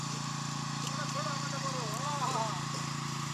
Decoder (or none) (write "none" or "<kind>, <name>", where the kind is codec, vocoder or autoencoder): vocoder, BigVGAN v2